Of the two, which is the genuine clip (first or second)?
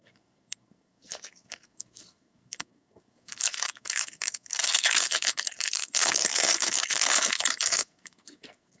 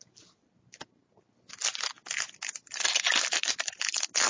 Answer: second